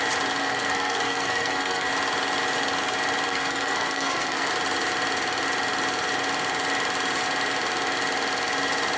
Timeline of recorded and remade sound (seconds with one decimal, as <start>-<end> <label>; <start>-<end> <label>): 0.0-0.4 recorded; 0.4-1.9 remade; 1.9-3.3 recorded; 3.3-4.5 remade; 4.5-9.0 recorded